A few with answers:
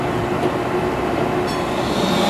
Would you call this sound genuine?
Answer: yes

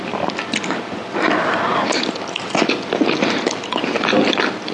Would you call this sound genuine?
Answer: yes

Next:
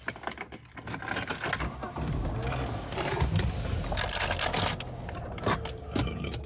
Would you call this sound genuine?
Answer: yes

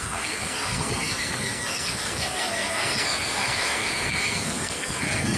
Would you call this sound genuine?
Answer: no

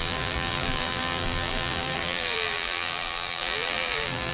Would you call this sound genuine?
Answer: no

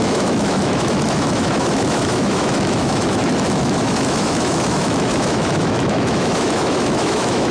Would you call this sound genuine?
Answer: no